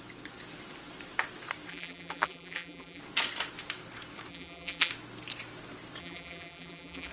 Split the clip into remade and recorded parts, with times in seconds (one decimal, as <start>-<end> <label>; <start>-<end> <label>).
0.0-1.7 recorded; 1.7-3.0 remade; 3.0-4.3 recorded; 4.3-4.9 remade; 4.9-6.0 recorded; 6.0-7.1 remade